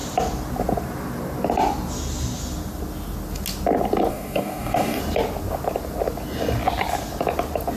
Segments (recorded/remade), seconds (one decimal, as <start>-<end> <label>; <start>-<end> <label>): 0.0-4.1 recorded; 4.1-5.0 remade; 5.0-7.8 recorded